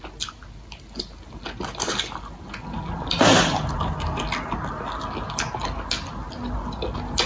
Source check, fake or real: real